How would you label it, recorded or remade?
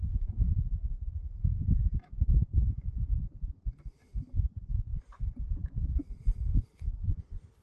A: remade